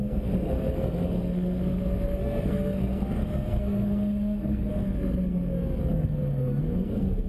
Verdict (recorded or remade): remade